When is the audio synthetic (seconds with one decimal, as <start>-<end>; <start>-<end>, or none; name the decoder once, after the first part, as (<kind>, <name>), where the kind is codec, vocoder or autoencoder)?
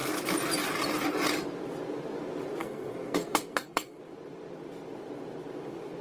2.6-4.0 (codec, SNAC)